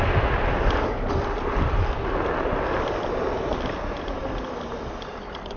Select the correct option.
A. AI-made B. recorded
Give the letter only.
B